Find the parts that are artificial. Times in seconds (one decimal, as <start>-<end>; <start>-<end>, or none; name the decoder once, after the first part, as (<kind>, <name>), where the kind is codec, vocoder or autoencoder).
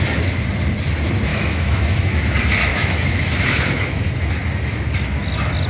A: 1.3-2.2 (autoencoder, DAC-VAE); 2.7-4.0